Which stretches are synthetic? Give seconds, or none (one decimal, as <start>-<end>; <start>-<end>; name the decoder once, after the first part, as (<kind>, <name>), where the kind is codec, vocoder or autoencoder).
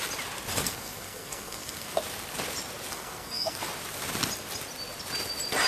0.5-2.0 (codec, SNAC); 2.9-3.6